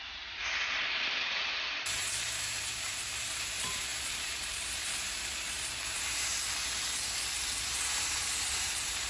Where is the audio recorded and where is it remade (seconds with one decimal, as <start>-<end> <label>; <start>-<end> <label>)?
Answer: 0.0-6.3 remade; 6.3-7.6 recorded; 7.6-9.1 remade